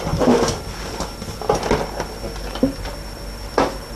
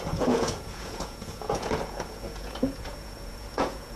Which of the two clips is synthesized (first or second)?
second